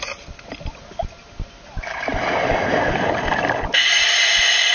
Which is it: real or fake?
real